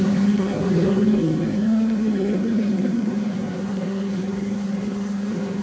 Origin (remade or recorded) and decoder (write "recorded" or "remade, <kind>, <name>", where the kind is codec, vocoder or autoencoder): remade, codec, SNAC